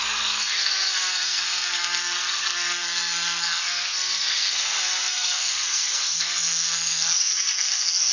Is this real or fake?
fake